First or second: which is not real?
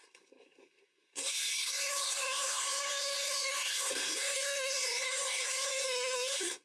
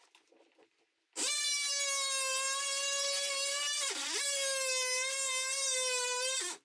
first